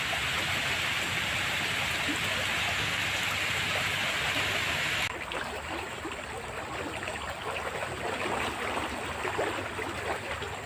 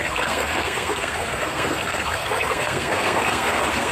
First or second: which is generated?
second